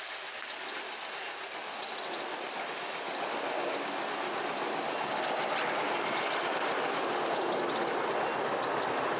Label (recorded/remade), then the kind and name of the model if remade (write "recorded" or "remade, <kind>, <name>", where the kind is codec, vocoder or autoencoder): recorded